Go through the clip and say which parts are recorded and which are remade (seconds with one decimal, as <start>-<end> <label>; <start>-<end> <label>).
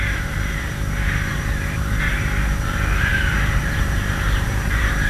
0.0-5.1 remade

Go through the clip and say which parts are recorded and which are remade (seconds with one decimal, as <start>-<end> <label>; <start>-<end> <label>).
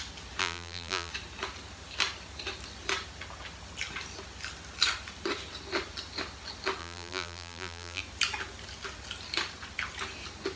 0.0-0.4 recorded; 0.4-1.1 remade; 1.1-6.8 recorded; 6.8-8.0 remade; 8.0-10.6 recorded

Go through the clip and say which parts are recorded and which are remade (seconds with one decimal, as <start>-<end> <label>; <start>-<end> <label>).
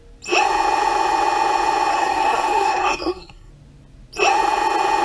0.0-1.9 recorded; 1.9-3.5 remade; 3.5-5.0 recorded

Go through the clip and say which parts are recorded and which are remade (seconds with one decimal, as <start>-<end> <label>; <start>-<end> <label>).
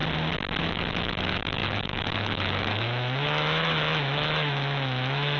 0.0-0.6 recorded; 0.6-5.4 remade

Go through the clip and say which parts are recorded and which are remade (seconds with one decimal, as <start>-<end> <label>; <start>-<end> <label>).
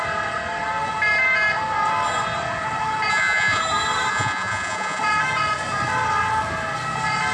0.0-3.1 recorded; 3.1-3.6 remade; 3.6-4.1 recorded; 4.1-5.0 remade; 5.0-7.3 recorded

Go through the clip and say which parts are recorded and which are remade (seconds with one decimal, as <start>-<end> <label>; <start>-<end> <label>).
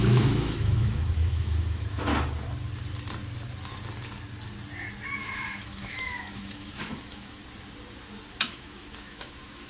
0.0-2.1 remade; 2.1-5.2 recorded; 5.2-7.4 remade; 7.4-8.3 recorded; 8.3-9.7 remade